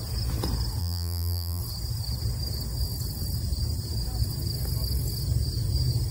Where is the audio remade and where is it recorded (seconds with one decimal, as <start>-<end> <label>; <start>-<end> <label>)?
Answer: 0.0-0.8 recorded; 0.8-1.6 remade; 1.6-6.1 recorded